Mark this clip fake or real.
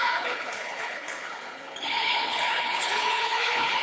fake